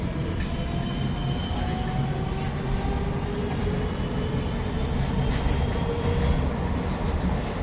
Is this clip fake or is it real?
real